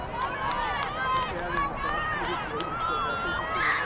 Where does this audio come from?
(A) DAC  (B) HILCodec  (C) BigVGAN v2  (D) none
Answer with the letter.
D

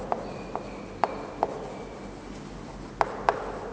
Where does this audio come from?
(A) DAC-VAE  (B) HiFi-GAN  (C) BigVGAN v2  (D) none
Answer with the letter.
D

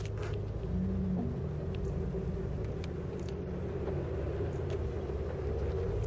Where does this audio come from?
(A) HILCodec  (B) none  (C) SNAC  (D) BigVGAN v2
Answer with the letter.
B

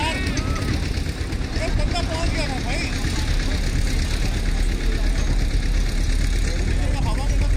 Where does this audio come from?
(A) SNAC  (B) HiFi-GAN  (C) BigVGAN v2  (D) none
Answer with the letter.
D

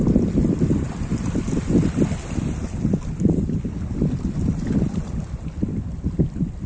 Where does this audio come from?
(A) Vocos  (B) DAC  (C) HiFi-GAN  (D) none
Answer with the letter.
D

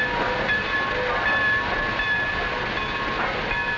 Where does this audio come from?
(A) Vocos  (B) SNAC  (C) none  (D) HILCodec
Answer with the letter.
C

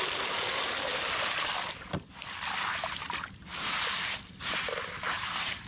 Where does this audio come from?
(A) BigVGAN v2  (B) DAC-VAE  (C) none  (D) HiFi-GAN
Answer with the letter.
C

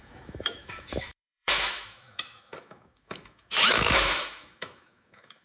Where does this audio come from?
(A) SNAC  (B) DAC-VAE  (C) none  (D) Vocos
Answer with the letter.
B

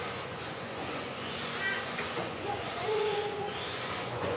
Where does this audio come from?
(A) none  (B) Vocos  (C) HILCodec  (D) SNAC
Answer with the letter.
B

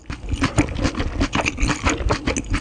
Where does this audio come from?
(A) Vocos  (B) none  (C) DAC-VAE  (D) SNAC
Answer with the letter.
B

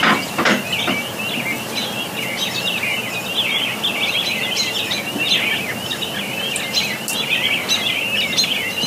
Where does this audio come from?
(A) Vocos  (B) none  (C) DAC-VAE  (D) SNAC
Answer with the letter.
B